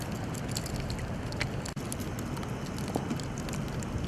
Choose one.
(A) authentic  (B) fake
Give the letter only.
A